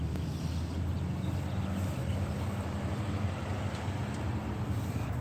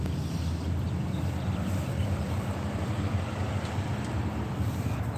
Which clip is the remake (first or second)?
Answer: second